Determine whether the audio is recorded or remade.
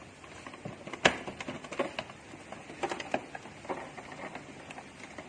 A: recorded